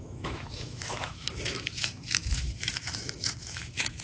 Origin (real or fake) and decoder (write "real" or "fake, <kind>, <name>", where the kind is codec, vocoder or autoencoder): fake, autoencoder, DAC-VAE